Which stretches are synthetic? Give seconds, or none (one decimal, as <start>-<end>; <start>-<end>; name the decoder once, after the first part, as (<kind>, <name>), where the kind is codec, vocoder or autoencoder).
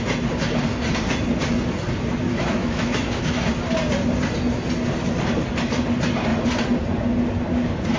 2.3-3.3 (autoencoder, DAC-VAE)